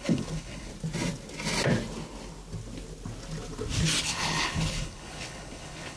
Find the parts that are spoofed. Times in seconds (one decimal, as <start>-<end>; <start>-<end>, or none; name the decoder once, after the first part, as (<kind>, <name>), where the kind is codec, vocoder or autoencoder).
0.0-0.7 (codec, HILCodec); 4.0-6.0